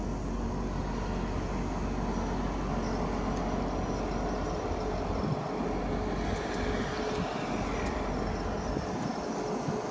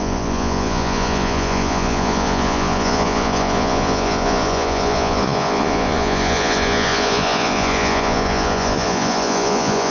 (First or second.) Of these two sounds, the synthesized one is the second